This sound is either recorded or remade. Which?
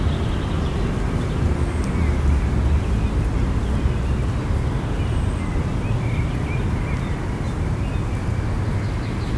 recorded